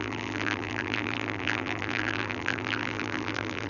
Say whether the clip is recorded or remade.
remade